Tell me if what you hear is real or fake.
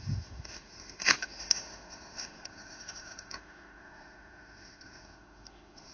fake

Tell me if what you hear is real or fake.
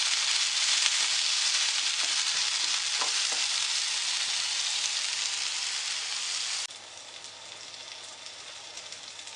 real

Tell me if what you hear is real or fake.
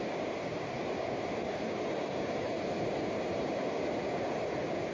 real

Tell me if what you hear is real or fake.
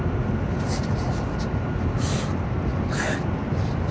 real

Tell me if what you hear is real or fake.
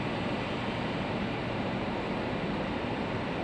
real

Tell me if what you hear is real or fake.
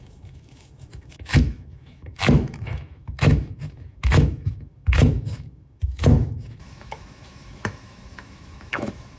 fake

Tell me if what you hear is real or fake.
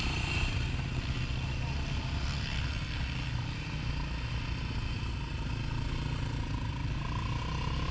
real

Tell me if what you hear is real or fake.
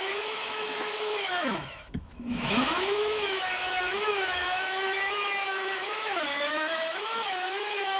fake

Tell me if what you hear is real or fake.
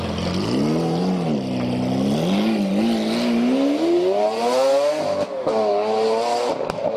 real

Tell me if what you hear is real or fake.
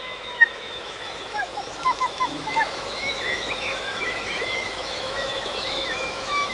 fake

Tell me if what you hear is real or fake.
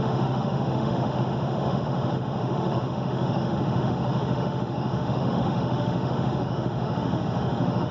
fake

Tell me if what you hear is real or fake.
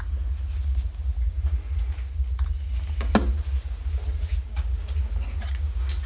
real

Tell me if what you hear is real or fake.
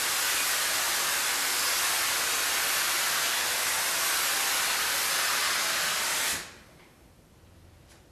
real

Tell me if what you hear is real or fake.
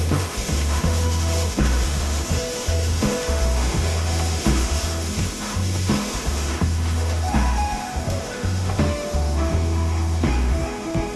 fake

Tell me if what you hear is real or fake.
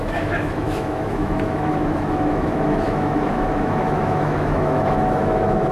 fake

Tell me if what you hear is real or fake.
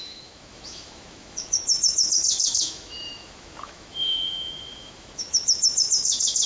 fake